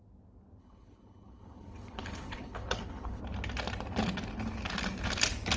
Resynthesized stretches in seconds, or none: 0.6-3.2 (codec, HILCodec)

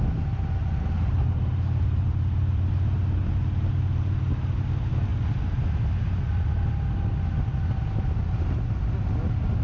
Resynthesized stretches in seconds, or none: none

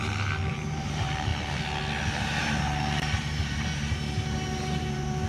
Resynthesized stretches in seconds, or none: 0.5-1.3 (vocoder, BigVGAN v2); 2.4-5.3

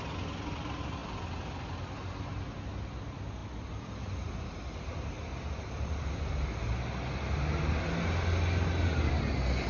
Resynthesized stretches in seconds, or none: none

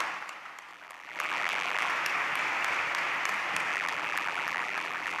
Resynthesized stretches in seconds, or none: 0.7-1.9 (vocoder, BigVGAN v2); 3.7-5.2

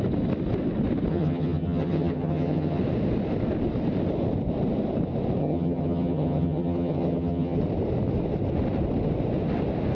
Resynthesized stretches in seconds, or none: 1.1-2.8 (vocoder, HiFi-GAN); 5.4-7.6

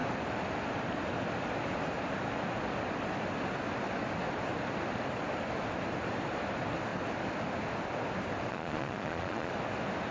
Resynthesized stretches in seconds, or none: 8.5-9.5 (vocoder, Vocos)